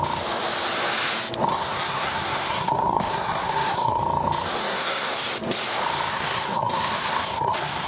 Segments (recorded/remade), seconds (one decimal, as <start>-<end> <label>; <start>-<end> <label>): 0.0-1.5 recorded; 1.5-4.0 remade; 4.0-4.6 recorded; 4.6-5.1 remade; 5.1-6.1 recorded; 6.1-7.9 remade